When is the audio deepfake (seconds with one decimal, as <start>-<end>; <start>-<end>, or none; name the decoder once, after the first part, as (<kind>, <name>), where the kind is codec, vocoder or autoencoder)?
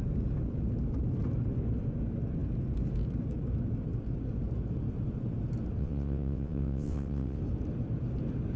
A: 5.8-7.4 (vocoder, WaveNeXt)